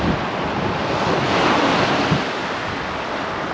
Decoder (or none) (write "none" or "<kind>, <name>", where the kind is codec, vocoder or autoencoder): none